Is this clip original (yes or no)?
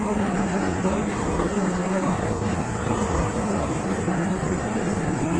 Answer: no